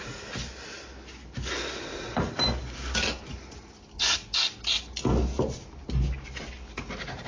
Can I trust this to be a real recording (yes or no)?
yes